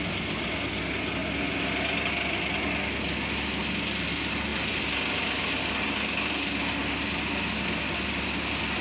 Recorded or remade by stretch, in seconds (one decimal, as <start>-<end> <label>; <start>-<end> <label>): 0.0-8.8 recorded